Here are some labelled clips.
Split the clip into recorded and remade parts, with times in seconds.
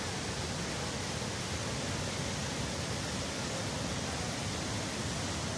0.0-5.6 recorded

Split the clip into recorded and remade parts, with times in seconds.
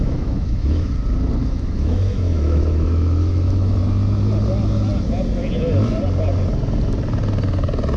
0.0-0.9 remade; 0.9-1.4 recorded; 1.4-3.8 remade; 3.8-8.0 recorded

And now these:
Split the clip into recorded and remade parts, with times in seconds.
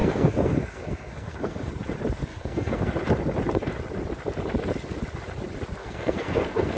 0.0-1.7 remade; 1.7-2.2 recorded; 2.2-2.9 remade; 2.9-5.8 recorded; 5.8-6.8 remade